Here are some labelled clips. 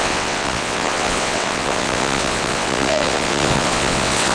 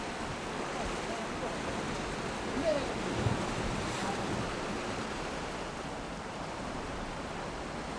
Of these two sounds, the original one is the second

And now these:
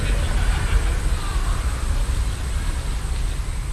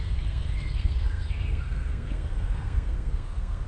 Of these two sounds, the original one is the first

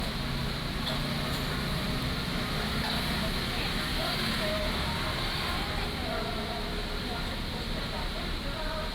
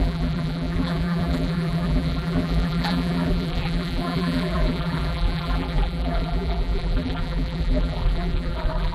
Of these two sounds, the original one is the first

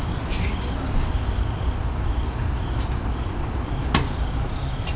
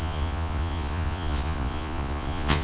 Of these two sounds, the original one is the first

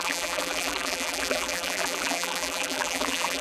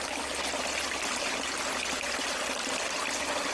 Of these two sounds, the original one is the second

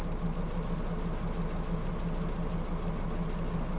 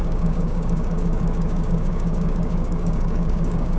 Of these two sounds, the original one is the first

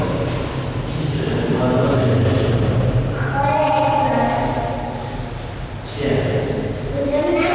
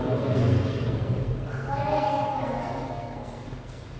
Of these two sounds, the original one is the first